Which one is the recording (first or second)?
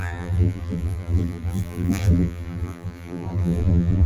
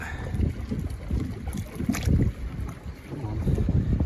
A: second